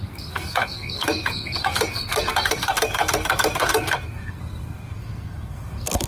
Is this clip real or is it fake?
fake